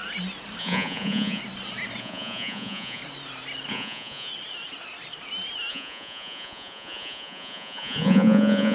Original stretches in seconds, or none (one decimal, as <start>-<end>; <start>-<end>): 0.0-0.6; 1.4-2.0; 3.0-3.7; 4.3-5.7

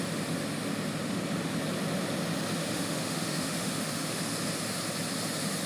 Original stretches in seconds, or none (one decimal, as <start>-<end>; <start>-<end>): 0.0-2.6; 4.2-5.7

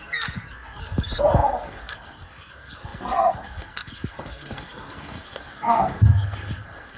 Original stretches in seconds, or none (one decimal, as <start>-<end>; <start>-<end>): none

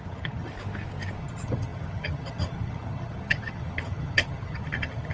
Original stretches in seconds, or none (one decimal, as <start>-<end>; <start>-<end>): 0.5-1.2

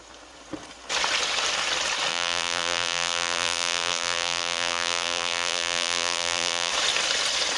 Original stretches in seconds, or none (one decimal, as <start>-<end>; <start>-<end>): 0.0-2.1; 6.7-7.6

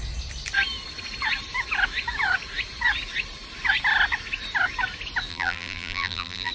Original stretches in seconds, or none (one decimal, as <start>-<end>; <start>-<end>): 0.0-5.3